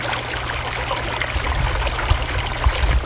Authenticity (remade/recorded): recorded